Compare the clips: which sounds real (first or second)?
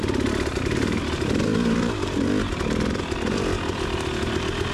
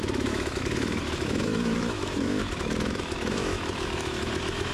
first